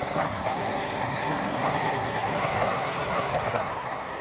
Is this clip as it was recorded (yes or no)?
no